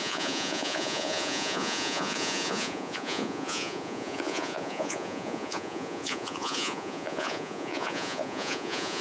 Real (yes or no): no